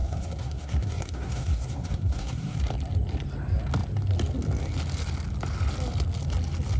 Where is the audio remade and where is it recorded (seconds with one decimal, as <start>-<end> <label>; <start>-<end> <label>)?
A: 0.0-2.6 remade; 2.6-6.8 recorded